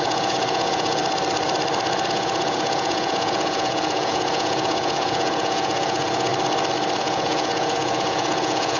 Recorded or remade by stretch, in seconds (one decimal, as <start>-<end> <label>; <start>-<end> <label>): 0.0-1.0 remade; 1.0-2.1 recorded; 2.1-6.3 remade; 6.3-7.0 recorded; 7.0-8.8 remade